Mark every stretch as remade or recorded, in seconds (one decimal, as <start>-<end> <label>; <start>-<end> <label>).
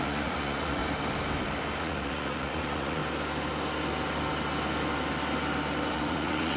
0.0-0.8 remade; 0.8-1.8 recorded; 1.8-3.0 remade; 3.0-5.9 recorded; 5.9-6.6 remade